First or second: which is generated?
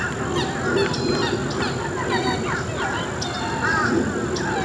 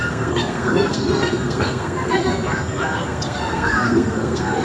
second